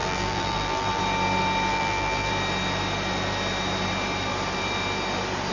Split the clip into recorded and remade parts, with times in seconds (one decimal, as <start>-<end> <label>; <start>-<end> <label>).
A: 0.0-1.0 remade; 1.0-1.7 recorded; 1.7-2.3 remade; 2.3-5.5 recorded